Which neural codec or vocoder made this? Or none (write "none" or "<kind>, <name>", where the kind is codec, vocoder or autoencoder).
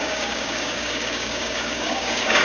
codec, DAC